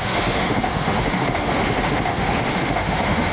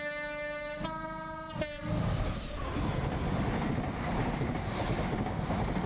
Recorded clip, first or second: second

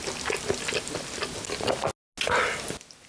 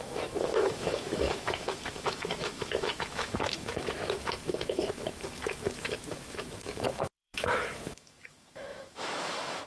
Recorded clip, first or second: first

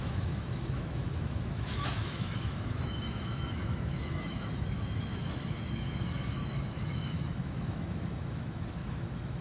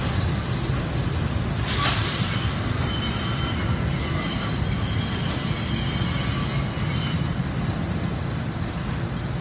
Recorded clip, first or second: second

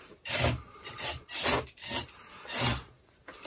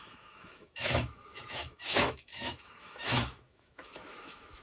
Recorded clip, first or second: first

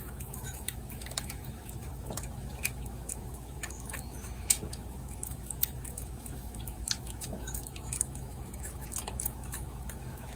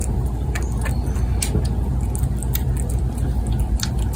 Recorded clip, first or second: second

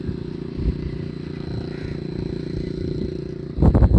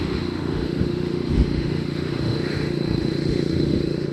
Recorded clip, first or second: first